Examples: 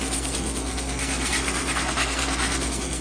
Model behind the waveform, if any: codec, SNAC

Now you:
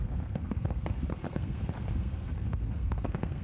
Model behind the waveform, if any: codec, SNAC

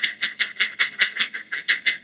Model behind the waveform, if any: codec, SNAC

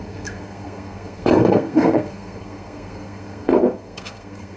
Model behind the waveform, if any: codec, SNAC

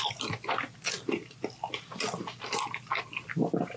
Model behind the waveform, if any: none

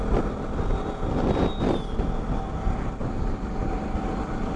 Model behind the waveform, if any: none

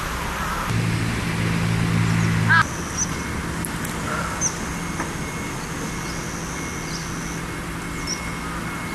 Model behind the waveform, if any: none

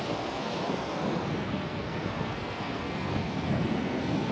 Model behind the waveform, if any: codec, SNAC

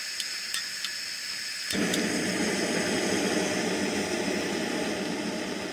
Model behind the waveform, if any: none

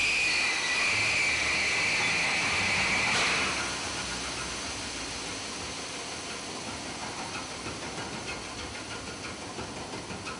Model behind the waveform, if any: none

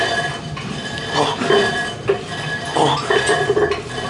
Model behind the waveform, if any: none